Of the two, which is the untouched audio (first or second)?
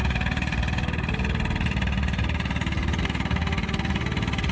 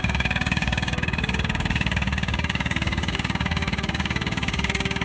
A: first